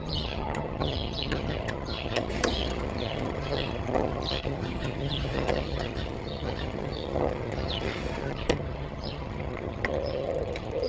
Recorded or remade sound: remade